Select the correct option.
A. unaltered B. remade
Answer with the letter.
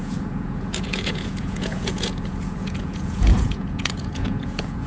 B